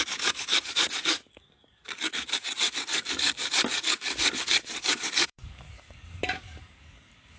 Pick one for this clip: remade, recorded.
remade